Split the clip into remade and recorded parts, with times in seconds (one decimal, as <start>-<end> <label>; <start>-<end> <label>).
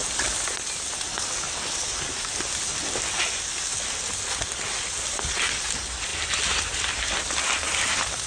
0.0-8.3 recorded